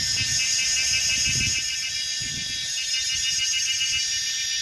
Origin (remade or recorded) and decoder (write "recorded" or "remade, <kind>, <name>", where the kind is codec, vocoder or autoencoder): recorded